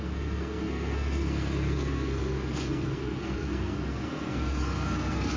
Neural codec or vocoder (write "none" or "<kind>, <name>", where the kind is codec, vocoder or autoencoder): codec, SNAC